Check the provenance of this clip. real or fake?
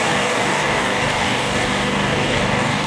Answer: fake